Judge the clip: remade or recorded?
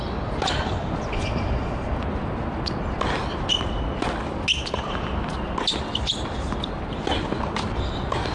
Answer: recorded